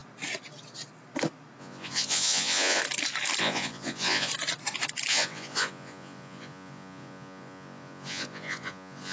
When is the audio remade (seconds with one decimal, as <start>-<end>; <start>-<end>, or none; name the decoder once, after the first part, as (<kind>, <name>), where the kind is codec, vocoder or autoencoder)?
1.6-2.8 (vocoder, Vocos); 3.4-4.3; 5.1-9.1